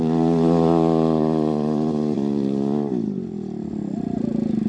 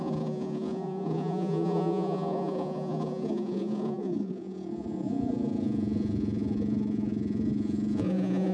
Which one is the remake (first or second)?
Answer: second